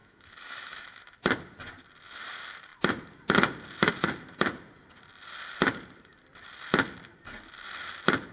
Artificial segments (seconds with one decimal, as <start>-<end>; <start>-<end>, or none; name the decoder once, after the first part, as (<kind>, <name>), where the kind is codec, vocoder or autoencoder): 0.0-1.0 (autoencoder, DAC-VAE)

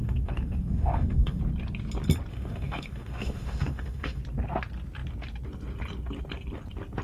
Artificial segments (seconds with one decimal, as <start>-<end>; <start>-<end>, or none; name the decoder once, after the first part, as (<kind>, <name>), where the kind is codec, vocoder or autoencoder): 0.0-1.4 (autoencoder, DAC-VAE); 2.3-4.2